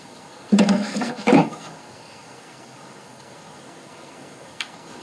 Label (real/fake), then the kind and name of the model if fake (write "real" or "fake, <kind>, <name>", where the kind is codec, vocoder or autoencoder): fake, codec, SNAC